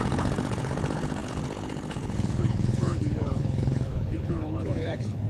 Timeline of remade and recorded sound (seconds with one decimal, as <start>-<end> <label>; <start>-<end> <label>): 0.0-5.3 remade